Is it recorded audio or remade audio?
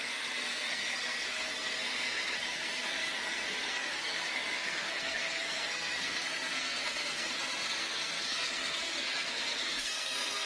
remade